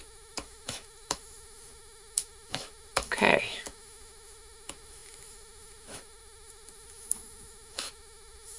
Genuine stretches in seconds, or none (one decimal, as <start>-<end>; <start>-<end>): none